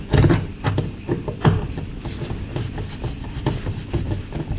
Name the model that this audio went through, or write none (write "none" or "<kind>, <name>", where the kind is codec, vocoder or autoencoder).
vocoder, BigVGAN v2